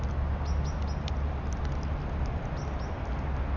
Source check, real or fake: real